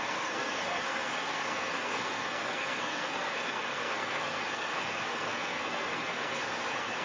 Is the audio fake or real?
fake